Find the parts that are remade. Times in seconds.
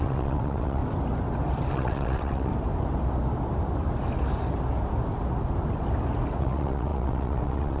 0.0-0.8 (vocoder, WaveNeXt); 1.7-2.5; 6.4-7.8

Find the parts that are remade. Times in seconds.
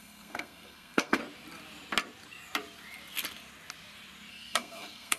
0.0-1.2 (codec, SNAC); 4.3-5.2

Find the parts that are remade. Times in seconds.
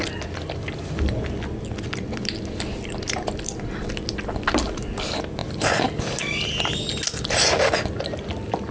none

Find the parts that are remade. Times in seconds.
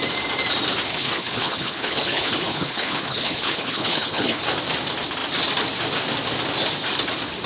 0.9-4.4 (codec, HILCodec)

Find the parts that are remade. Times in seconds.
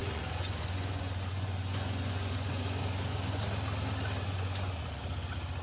0.0-3.4 (vocoder, Vocos); 4.3-5.0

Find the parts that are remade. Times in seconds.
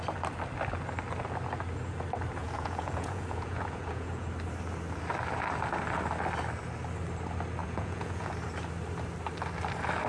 2.4-4.3 (vocoder, Vocos); 7.6-8.3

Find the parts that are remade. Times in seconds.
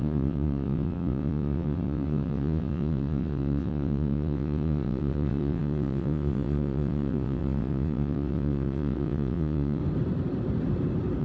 0.0-9.8 (vocoder, WaveNeXt)